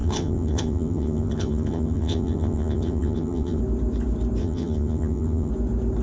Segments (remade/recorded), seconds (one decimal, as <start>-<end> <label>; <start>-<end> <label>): 0.0-3.6 remade; 3.6-4.4 recorded; 4.4-5.5 remade; 5.5-6.0 recorded